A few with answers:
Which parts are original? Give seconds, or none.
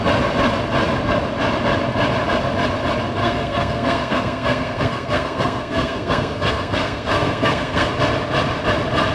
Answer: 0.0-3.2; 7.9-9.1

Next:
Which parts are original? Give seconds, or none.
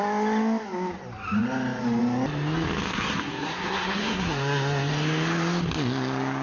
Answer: 0.0-2.9; 4.9-6.4